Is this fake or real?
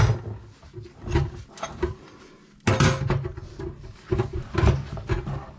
real